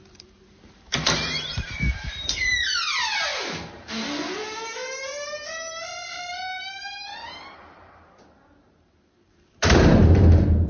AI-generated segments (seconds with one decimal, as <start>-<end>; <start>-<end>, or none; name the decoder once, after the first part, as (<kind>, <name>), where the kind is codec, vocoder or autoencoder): 0.0-10.7 (vocoder, BigVGAN v2)